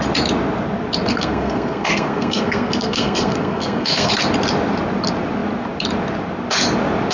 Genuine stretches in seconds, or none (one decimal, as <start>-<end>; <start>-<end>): 0.0-1.1; 4.1-7.1